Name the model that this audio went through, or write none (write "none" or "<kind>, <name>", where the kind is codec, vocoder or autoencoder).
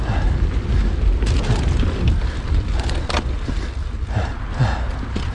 none